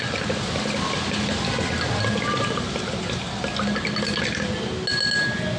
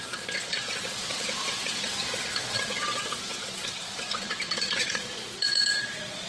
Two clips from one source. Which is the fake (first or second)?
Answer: second